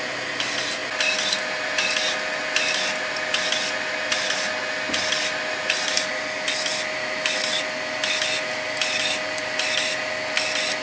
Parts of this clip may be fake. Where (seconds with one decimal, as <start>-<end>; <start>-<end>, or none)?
none